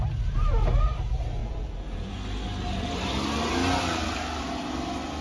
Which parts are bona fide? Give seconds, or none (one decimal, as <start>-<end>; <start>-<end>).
0.0-1.4; 2.1-5.2